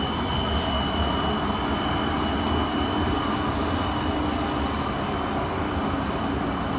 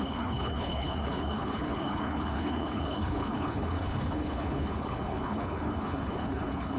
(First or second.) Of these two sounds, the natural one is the first